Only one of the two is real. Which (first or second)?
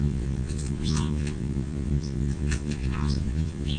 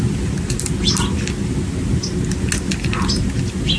second